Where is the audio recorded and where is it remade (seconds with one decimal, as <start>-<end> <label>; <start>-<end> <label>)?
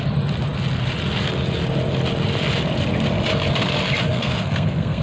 0.0-4.0 recorded; 4.0-5.0 remade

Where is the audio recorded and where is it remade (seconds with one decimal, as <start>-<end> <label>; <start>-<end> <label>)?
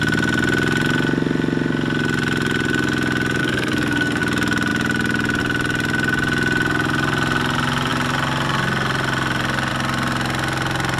0.0-3.4 recorded; 3.4-4.2 remade; 4.2-11.0 recorded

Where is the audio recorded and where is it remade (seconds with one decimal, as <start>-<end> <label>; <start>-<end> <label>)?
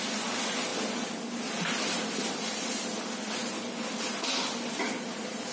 0.0-5.5 recorded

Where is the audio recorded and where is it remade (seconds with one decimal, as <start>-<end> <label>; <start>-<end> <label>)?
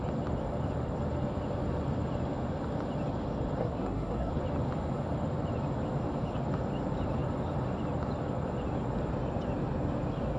0.0-3.6 recorded; 3.6-4.3 remade; 4.3-10.4 recorded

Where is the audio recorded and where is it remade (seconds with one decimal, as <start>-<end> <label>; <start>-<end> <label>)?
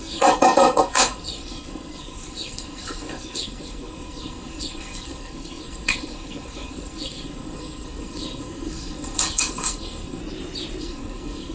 0.0-10.2 remade; 10.2-10.8 recorded; 10.8-11.5 remade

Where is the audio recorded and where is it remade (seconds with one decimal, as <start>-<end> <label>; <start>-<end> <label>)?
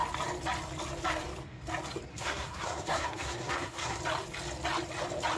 0.0-2.1 recorded; 2.1-4.0 remade; 4.0-5.4 recorded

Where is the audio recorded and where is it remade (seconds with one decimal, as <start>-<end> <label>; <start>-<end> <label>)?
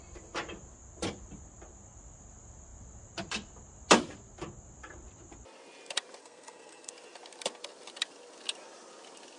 0.0-6.2 recorded; 6.2-6.9 remade; 6.9-9.4 recorded